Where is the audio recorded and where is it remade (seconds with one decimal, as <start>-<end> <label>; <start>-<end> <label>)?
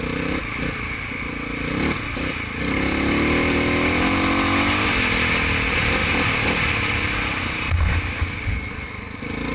0.0-6.0 recorded; 6.0-6.9 remade; 6.9-9.5 recorded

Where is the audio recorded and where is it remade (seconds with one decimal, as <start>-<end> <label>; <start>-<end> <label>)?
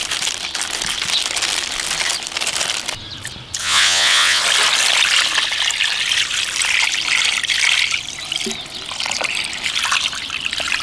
0.0-3.6 recorded; 3.6-4.4 remade; 4.4-10.8 recorded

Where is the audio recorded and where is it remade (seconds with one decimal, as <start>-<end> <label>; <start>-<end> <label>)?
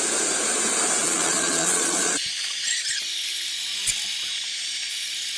0.0-1.0 recorded; 1.0-3.0 remade; 3.0-4.3 recorded; 4.3-4.9 remade; 4.9-5.4 recorded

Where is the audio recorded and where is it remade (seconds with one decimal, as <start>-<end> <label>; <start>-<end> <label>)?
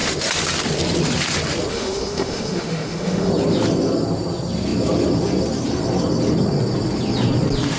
0.0-1.7 recorded; 1.7-3.3 remade; 3.3-7.8 recorded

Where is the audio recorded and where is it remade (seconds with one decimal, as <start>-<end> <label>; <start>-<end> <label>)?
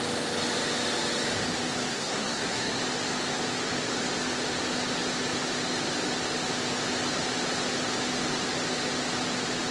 0.0-1.9 recorded; 1.9-2.8 remade; 2.8-9.7 recorded